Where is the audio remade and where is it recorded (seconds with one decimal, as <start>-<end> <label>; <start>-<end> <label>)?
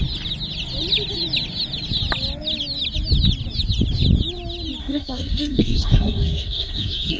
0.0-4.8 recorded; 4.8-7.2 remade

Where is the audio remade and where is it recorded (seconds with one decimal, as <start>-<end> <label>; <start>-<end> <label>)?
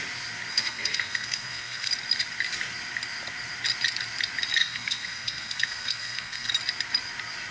0.0-0.5 recorded; 0.5-1.9 remade; 1.9-4.6 recorded; 4.6-6.5 remade; 6.5-7.5 recorded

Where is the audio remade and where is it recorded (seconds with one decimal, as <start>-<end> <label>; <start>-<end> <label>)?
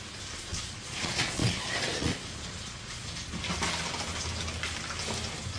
0.0-0.5 recorded; 0.5-3.1 remade; 3.1-5.6 recorded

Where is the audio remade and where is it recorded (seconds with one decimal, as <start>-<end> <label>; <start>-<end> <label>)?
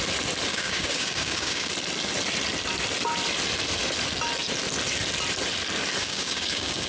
0.0-0.5 recorded; 0.5-1.7 remade; 1.7-6.0 recorded; 6.0-6.9 remade